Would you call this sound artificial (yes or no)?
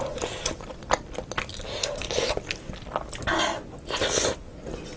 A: no